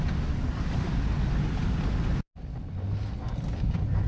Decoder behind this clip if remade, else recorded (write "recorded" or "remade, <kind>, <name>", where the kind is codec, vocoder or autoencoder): recorded